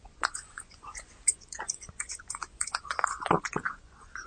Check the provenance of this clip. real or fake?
fake